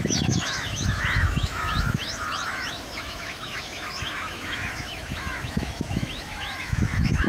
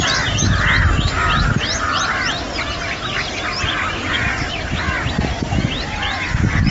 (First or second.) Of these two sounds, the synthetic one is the first